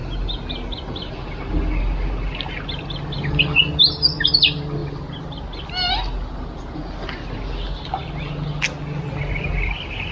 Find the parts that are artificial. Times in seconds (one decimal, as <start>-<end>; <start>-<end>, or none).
none